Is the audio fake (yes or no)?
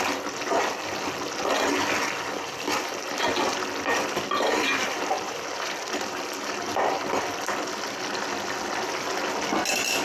no